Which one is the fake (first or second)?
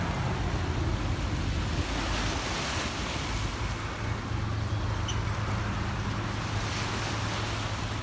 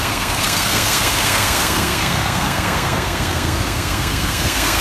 second